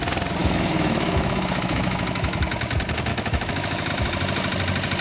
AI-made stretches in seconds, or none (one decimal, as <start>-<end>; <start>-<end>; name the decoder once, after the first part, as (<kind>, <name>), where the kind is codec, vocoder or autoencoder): 0.4-2.5 (autoencoder, DAC-VAE); 3.1-3.9

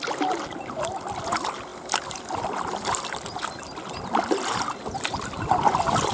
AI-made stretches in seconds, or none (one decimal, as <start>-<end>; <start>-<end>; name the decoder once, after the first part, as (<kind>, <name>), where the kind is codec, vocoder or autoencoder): none

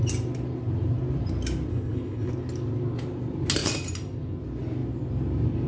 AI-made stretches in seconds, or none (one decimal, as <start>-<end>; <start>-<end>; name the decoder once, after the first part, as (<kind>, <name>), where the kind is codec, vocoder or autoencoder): 1.7-2.3 (codec, HILCodec)

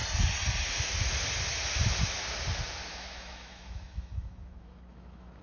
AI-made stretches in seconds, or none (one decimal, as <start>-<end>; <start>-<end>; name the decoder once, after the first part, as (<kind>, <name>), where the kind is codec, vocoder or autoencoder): 2.9-5.4 (autoencoder, DAC-VAE)

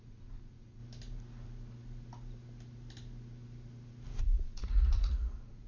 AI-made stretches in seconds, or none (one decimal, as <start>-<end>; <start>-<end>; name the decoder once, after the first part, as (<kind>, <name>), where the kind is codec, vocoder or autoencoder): 0.0-0.8 (vocoder, Vocos); 4.2-5.7

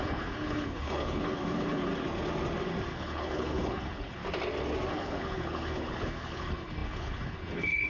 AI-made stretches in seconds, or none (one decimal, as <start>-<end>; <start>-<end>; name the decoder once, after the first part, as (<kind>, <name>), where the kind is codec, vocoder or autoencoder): 0.0-1.9 (codec, HILCodec); 2.9-4.2; 4.9-7.9